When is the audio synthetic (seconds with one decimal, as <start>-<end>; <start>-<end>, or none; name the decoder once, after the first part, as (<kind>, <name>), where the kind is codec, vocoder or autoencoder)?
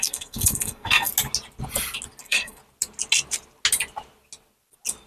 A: 0.0-1.1 (codec, SNAC); 2.2-2.6